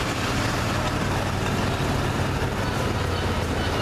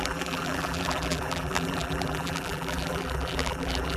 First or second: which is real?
first